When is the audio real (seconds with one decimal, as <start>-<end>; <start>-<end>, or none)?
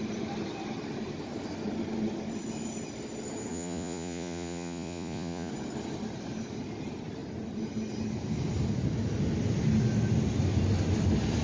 0.0-3.5; 5.5-11.4